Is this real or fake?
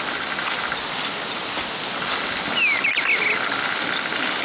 real